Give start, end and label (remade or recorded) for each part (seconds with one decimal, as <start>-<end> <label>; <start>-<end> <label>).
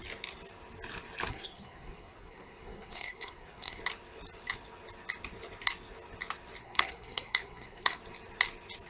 0.0-1.3 recorded; 1.3-3.8 remade; 3.8-6.6 recorded; 6.6-8.0 remade; 8.0-8.9 recorded